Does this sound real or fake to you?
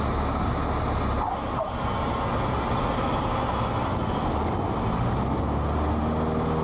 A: real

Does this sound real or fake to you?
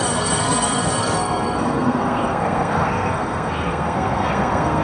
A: fake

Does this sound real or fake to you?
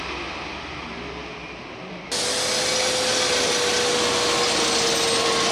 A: real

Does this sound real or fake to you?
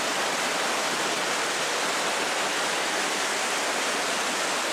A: real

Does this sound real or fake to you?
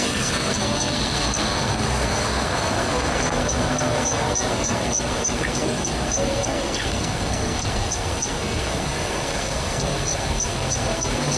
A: fake